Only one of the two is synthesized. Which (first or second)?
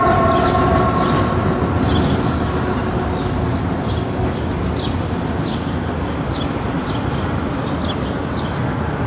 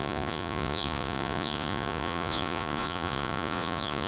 second